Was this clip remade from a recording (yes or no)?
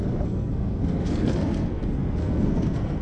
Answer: yes